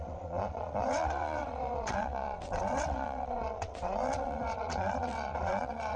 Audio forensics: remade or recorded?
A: remade